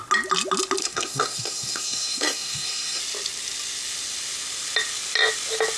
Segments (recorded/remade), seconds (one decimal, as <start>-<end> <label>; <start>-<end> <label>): 0.0-0.8 recorded; 0.8-3.0 remade; 3.0-5.8 recorded